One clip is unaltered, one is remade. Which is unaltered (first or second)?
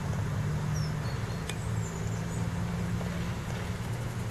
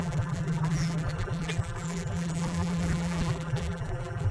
first